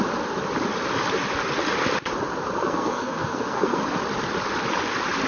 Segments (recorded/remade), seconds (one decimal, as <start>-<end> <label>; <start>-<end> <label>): 0.0-2.6 recorded; 2.6-3.8 remade; 3.8-5.3 recorded